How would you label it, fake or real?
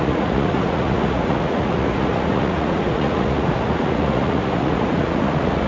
fake